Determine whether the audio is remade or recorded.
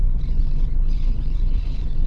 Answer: remade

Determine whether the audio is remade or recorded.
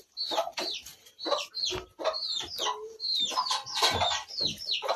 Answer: remade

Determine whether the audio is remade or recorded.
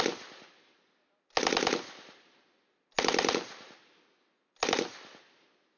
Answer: recorded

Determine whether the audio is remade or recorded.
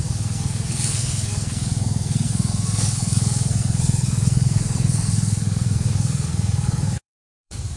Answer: remade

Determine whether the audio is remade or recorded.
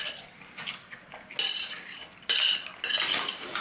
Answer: recorded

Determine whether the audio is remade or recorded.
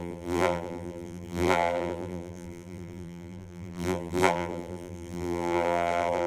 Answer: remade